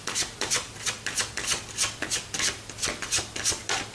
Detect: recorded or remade recorded